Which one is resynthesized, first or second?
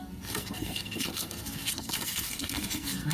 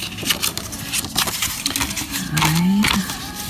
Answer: first